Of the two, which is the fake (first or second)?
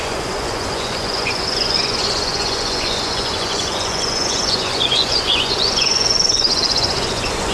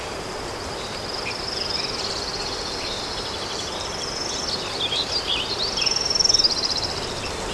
first